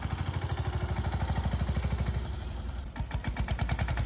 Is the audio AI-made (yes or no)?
no